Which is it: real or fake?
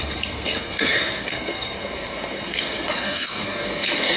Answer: fake